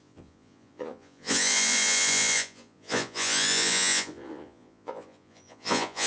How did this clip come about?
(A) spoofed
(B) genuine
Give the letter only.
A